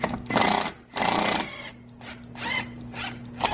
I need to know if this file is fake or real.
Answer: real